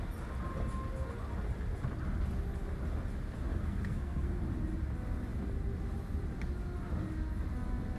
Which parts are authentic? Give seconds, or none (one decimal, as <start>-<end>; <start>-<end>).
0.0-3.5; 4.4-8.0